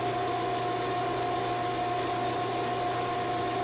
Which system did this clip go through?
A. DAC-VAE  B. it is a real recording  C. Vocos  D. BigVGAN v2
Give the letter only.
B